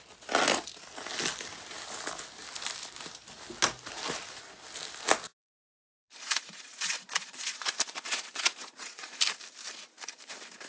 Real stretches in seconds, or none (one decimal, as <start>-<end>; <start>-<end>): 0.0-5.4; 9.2-10.7